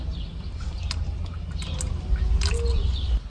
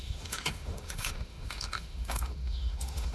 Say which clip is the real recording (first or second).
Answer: first